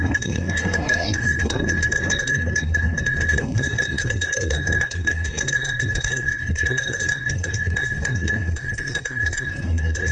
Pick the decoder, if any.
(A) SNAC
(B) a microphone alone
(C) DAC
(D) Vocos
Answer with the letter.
A